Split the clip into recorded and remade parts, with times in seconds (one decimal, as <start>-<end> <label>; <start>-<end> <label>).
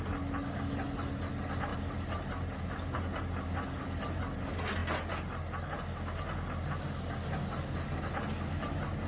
0.0-9.1 recorded